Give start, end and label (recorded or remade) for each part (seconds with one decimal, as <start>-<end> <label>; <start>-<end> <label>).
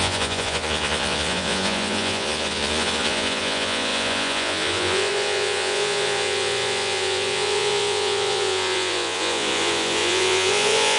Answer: 0.0-11.0 remade